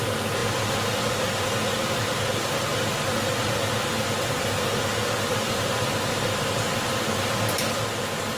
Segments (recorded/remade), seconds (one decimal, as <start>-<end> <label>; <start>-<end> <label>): 0.0-8.4 recorded